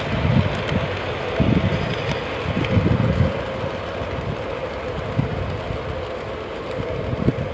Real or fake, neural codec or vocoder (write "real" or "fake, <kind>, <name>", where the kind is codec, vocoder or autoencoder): real